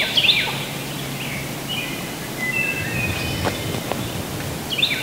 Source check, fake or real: real